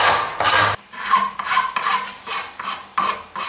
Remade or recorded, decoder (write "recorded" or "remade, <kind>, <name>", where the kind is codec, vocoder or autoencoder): recorded